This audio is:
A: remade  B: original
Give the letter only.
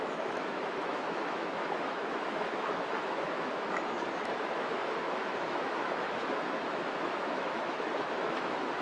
A